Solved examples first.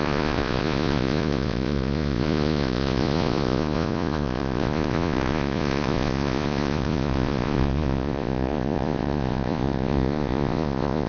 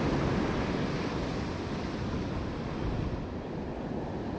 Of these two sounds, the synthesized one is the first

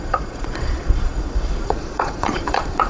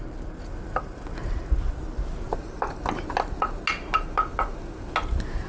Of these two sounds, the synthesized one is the first